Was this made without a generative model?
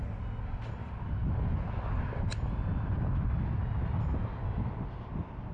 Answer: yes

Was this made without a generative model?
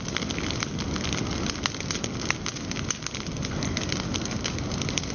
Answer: yes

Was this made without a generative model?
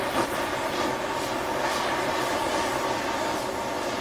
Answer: yes